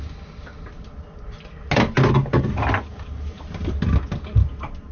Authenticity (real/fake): real